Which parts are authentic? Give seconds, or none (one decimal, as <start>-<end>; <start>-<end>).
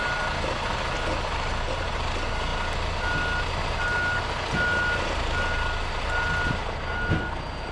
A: 0.0-7.7